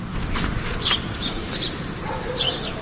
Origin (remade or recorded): remade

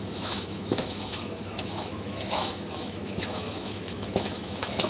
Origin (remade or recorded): remade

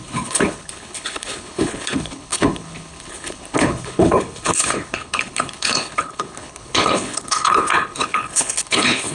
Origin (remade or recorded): remade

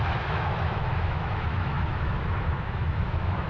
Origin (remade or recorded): remade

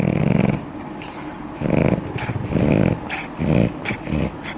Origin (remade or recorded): recorded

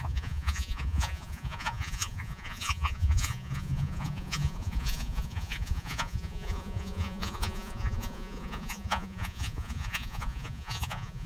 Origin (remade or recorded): remade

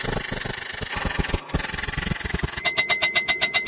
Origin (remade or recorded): recorded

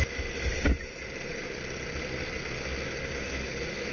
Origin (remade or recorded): recorded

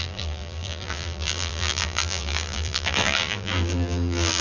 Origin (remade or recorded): remade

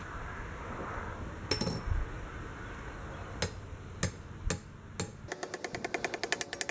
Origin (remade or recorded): recorded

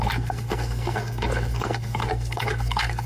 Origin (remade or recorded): remade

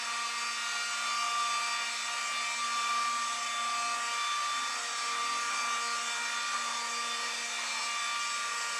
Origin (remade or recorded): recorded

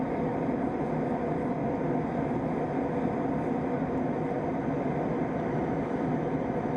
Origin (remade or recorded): recorded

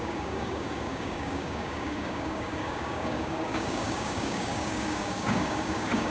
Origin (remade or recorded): remade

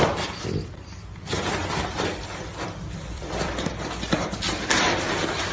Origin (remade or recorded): remade